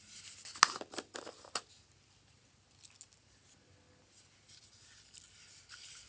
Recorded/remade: recorded